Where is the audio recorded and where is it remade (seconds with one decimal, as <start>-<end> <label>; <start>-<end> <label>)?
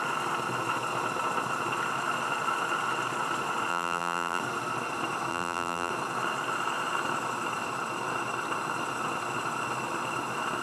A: 0.0-3.7 recorded; 3.7-4.4 remade; 4.4-5.3 recorded; 5.3-5.9 remade; 5.9-10.6 recorded